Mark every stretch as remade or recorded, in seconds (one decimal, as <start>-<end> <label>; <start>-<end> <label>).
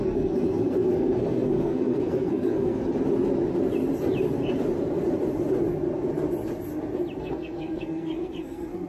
0.0-2.8 remade; 2.8-7.2 recorded; 7.2-8.9 remade